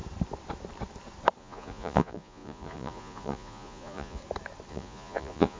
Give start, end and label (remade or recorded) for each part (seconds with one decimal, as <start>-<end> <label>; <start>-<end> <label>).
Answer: 0.0-1.4 recorded; 1.4-4.2 remade; 4.2-4.7 recorded; 4.7-5.6 remade

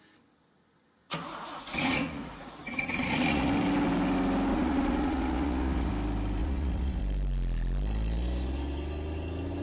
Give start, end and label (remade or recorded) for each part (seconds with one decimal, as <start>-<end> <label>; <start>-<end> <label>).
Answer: 0.0-1.0 recorded; 1.0-3.5 remade; 3.5-4.5 recorded; 4.5-5.9 remade; 5.9-6.4 recorded; 6.4-7.0 remade; 7.0-9.6 recorded

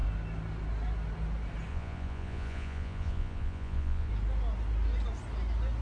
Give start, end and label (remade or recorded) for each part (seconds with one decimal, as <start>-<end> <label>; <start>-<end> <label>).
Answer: 0.0-1.7 recorded; 1.7-4.1 remade; 4.1-5.8 recorded

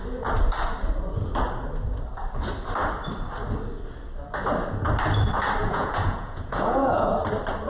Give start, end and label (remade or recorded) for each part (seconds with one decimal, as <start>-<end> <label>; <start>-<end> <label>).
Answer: 0.0-5.6 recorded; 5.6-7.1 remade; 7.1-7.7 recorded

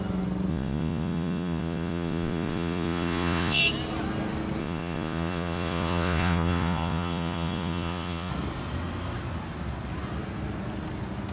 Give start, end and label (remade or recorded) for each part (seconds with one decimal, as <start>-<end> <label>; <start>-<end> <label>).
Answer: 0.0-0.5 recorded; 0.5-3.6 remade; 3.6-4.6 recorded; 4.6-8.3 remade; 8.3-11.3 recorded

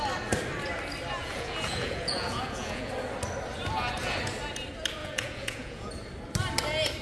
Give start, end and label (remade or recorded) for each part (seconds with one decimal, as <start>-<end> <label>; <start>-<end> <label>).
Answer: 0.0-1.2 recorded; 1.2-2.9 remade; 2.9-5.0 recorded; 5.0-5.9 remade; 5.9-7.0 recorded